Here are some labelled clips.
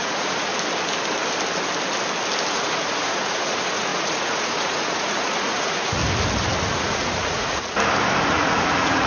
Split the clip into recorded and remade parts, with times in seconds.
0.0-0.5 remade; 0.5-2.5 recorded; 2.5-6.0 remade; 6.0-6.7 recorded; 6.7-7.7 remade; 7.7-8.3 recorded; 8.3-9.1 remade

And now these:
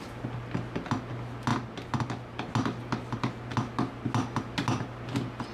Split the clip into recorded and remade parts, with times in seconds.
0.0-5.5 recorded

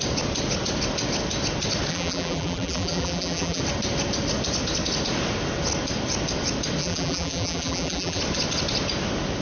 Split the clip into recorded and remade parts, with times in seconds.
0.0-1.9 recorded; 1.9-3.6 remade; 3.6-6.8 recorded; 6.8-8.2 remade; 8.2-9.4 recorded